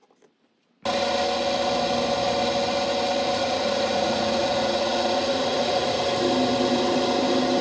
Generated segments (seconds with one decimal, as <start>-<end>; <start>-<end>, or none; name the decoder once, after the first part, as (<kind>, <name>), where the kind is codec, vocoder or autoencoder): 3.4-6.0 (vocoder, Vocos)